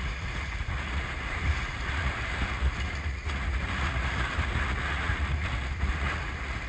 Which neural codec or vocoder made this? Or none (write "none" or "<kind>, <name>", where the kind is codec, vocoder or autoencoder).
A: vocoder, Vocos